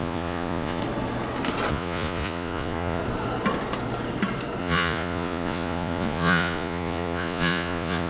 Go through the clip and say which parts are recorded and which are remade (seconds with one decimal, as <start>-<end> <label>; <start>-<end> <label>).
0.0-0.8 remade; 0.8-1.7 recorded; 1.7-3.0 remade; 3.0-4.6 recorded; 4.6-8.1 remade